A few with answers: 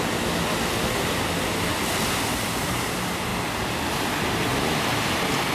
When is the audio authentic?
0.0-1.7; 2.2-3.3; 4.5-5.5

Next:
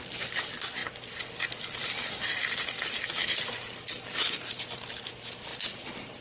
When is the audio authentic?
0.8-4.5; 5.5-6.2

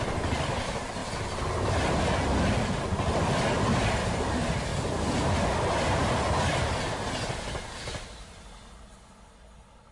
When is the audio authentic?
0.0-9.9

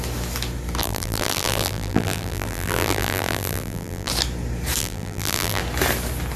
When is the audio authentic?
0.0-0.8; 4.1-4.8; 5.6-6.4

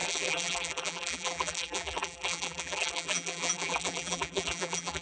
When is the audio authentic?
none

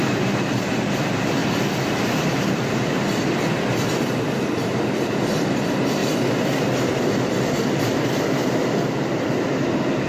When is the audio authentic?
1.4-2.2

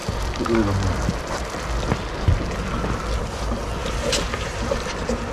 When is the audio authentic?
0.0-3.8